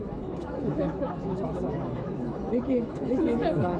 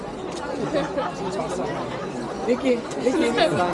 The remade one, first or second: first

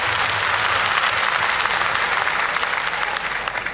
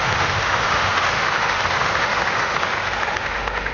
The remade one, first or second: second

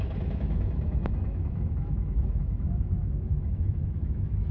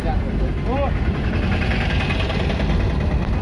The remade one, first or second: first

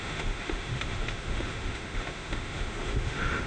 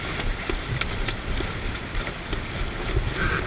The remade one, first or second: first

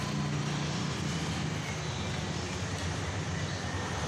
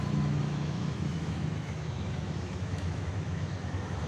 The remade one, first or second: second